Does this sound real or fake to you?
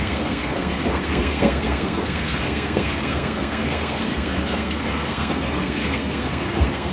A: fake